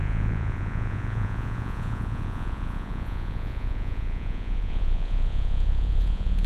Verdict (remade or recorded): remade